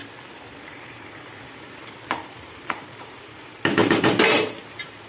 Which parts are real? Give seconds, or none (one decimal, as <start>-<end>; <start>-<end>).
0.0-0.6